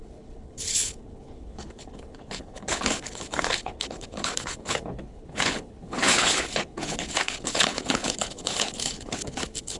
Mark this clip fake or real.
fake